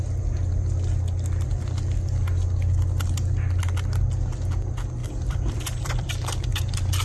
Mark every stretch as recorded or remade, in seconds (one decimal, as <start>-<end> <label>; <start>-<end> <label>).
0.0-5.0 recorded; 5.0-6.1 remade; 6.1-7.0 recorded